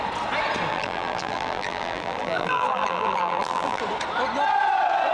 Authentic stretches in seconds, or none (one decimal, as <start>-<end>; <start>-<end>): 0.0-0.7; 3.8-5.1